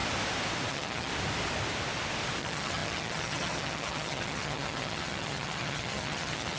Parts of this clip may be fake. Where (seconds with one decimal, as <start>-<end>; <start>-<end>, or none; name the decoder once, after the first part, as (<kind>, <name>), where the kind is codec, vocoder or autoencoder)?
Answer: 0.7-1.1 (vocoder, HiFi-GAN); 2.4-6.6